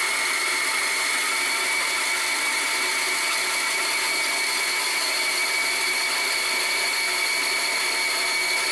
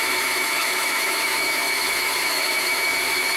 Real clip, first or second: first